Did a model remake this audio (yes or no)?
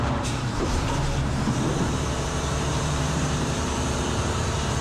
yes